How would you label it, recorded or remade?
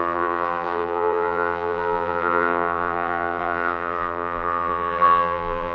remade